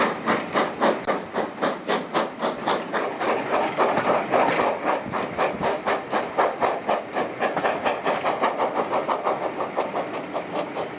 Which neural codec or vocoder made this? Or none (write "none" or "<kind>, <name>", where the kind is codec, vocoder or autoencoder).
none